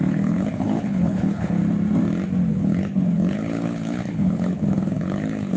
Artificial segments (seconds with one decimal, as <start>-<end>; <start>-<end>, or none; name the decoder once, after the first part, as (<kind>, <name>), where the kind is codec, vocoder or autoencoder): 0.0-1.6 (codec, HILCodec); 2.5-5.6